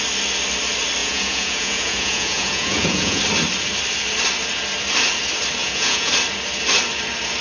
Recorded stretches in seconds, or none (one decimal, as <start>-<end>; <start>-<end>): 0.0-1.0; 3.2-5.6; 6.1-7.4